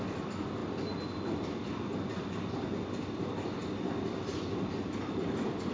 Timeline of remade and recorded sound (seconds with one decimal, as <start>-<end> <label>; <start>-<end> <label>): 0.0-5.7 recorded